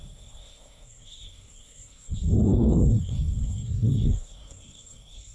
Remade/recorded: remade